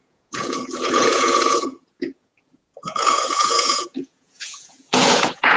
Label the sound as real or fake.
fake